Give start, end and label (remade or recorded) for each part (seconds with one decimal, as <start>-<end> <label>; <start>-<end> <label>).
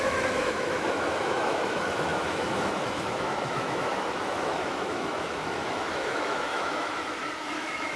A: 0.0-8.0 remade